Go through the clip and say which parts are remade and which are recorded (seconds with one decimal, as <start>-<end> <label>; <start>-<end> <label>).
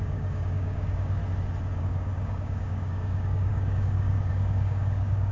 0.0-1.2 remade; 1.2-1.8 recorded; 1.8-5.3 remade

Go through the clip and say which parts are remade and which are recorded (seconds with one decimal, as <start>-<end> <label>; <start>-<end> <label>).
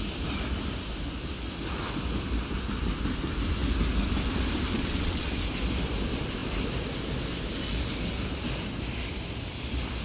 0.0-4.7 recorded; 4.7-5.3 remade; 5.3-10.0 recorded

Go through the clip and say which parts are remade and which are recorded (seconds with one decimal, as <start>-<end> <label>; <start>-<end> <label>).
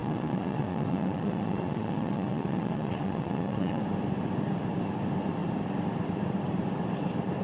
0.0-3.8 remade; 3.8-7.4 recorded